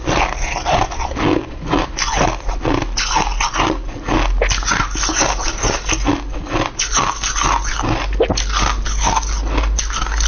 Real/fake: real